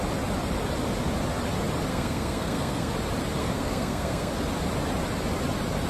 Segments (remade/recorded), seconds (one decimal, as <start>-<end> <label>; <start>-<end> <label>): 0.0-1.9 recorded; 1.9-2.9 remade; 2.9-3.4 recorded; 3.4-4.3 remade; 4.3-5.9 recorded